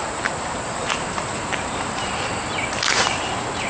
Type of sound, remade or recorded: remade